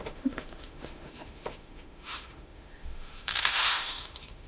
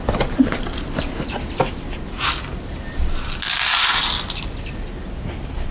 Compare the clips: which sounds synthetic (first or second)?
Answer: first